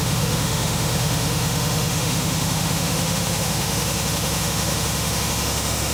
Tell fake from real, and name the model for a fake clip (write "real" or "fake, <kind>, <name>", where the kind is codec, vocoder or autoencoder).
fake, autoencoder, DAC-VAE